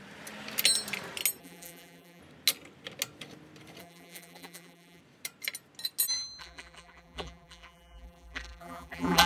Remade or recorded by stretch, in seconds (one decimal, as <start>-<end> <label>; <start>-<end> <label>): 0.0-1.4 recorded; 1.4-2.2 remade; 2.2-3.8 recorded; 3.8-5.0 remade; 5.0-6.4 recorded; 6.4-9.3 remade